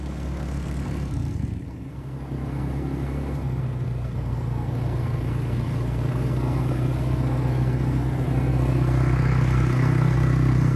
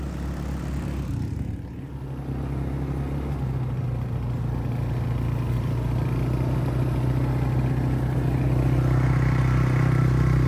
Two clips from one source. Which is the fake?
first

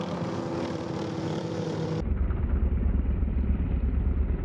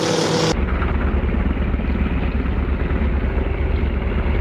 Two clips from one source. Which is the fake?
first